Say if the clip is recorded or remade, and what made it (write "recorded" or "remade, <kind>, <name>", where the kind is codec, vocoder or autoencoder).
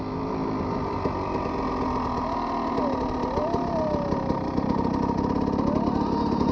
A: recorded